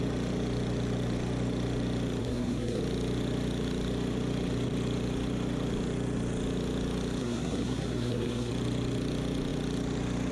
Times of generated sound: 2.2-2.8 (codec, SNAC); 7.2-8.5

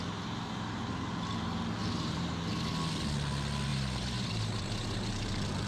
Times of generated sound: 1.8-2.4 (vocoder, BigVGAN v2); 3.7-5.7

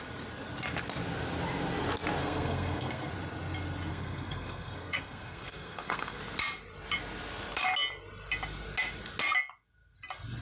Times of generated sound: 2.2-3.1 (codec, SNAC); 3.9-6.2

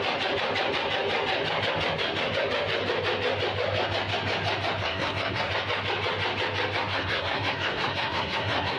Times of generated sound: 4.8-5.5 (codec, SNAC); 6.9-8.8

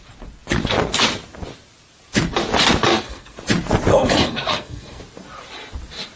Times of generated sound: 2.9-3.4 (codec, SNAC); 3.9-5.0

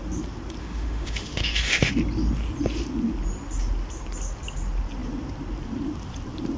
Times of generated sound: 0.6-1.9 (autoencoder, DAC-VAE)

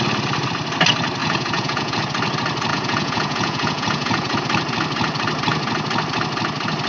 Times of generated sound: 1.2-2.0 (vocoder, Vocos); 2.7-4.4